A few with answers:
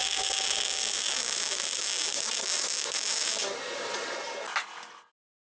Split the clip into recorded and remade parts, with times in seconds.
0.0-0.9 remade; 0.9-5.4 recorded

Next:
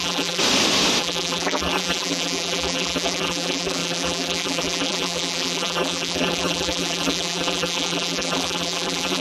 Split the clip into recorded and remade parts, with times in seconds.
0.0-0.4 remade; 0.4-1.0 recorded; 1.0-9.2 remade